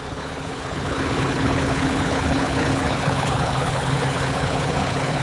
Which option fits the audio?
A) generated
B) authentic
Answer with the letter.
A